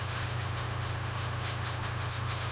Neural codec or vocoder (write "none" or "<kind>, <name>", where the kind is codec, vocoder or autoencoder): autoencoder, DAC-VAE